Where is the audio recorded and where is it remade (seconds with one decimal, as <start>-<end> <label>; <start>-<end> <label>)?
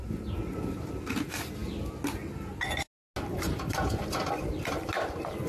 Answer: 0.0-5.5 recorded